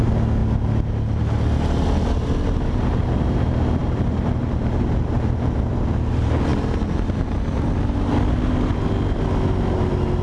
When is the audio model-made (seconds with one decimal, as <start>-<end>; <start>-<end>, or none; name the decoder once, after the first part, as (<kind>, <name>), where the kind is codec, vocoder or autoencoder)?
none